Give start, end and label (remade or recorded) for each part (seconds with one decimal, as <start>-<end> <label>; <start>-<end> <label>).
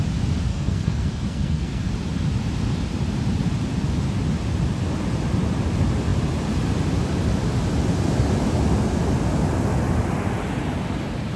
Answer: 0.0-0.5 recorded; 0.5-1.9 remade; 1.9-11.4 recorded